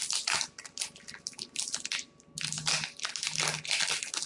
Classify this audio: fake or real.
real